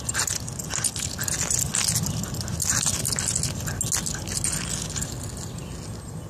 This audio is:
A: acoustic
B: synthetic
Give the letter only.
A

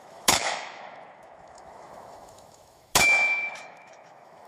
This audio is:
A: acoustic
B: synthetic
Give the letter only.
B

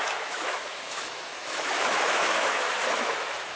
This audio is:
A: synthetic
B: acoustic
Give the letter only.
A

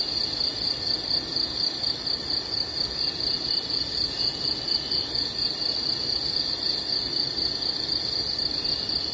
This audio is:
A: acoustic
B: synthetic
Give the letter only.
A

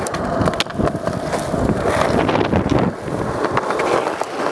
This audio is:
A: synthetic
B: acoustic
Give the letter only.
B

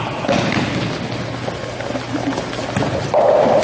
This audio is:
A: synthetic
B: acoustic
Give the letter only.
B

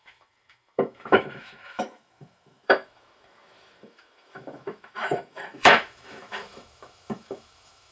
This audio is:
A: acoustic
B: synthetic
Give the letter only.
B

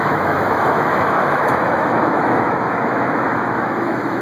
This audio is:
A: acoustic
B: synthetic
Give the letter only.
B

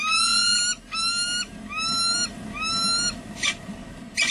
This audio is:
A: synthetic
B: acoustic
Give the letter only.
B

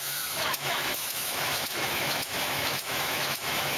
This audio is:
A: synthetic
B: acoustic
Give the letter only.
A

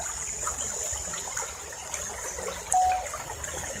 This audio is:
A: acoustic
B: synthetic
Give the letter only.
A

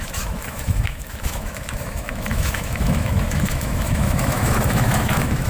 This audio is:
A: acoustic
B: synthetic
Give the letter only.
B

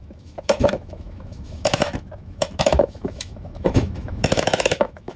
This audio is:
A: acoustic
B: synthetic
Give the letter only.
B